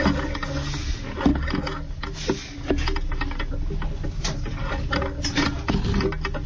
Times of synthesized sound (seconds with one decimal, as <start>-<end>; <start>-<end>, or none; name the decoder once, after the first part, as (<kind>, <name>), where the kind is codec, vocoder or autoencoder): none